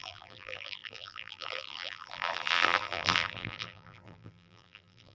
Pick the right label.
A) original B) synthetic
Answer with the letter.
B